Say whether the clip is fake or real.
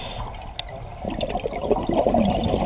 real